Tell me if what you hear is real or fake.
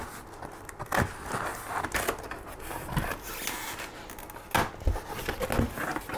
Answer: real